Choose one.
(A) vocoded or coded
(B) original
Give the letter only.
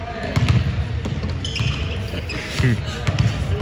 B